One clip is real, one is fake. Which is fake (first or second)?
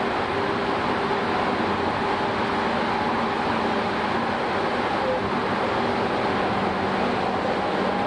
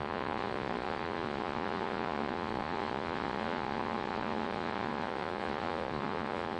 second